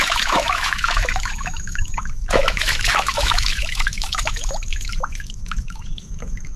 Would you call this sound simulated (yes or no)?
yes